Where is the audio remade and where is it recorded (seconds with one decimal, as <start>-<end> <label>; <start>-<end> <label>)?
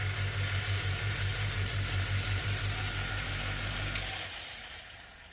0.0-0.5 recorded; 0.5-5.3 remade